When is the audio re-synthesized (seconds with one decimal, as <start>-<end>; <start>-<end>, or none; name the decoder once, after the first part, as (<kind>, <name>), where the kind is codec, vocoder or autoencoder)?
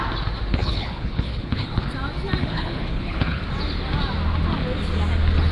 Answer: 0.6-1.9 (codec, HILCodec); 2.4-3.4